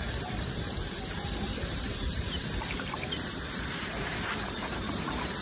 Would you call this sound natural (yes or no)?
no